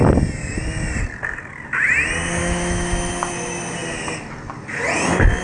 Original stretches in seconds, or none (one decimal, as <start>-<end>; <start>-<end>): 0.0-2.4; 3.1-5.4